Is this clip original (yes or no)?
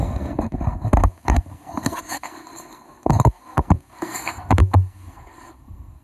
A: no